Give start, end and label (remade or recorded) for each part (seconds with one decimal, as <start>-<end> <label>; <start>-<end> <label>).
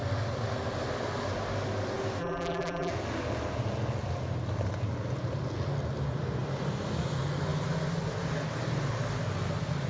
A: 0.0-2.2 recorded; 2.2-2.9 remade; 2.9-9.9 recorded